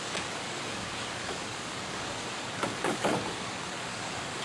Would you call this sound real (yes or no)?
no